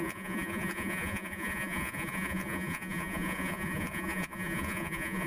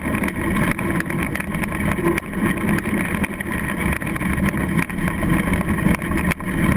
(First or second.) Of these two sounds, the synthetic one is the first